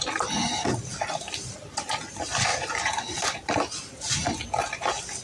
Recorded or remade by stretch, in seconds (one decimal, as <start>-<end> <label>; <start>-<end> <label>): 0.0-0.9 recorded; 0.9-1.8 remade; 1.8-2.5 recorded; 2.5-4.1 remade; 4.1-5.2 recorded